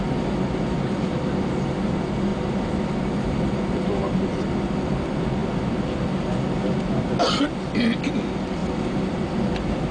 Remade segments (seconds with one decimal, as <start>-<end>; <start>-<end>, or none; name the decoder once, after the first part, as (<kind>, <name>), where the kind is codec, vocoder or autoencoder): none